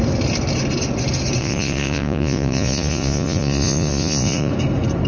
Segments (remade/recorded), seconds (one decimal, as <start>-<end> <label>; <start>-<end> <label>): 0.0-1.4 recorded; 1.4-4.5 remade; 4.5-5.1 recorded